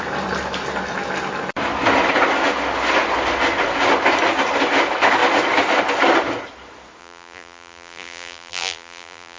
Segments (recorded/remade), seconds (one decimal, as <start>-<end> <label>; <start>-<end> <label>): 0.0-7.0 recorded; 7.0-9.4 remade

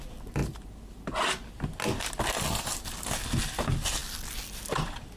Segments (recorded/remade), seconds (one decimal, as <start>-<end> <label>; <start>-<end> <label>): 0.0-5.2 recorded

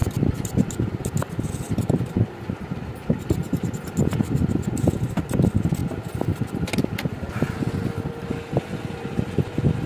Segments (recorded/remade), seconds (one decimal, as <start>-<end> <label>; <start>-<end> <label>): 0.0-1.9 remade; 1.9-9.9 recorded

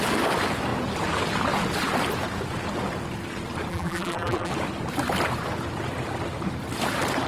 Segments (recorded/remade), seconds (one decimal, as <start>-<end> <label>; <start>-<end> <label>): 0.0-3.7 recorded; 3.7-4.5 remade; 4.5-7.3 recorded

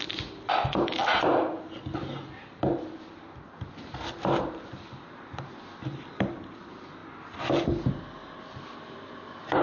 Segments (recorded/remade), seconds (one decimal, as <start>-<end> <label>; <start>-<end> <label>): 0.0-9.6 recorded

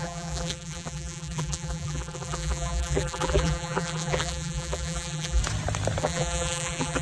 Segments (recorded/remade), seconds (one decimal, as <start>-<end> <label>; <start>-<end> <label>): 0.0-5.4 remade; 5.4-6.0 recorded; 6.0-7.0 remade

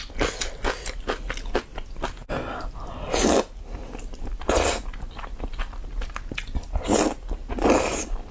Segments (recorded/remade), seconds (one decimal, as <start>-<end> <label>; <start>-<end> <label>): 0.0-8.3 recorded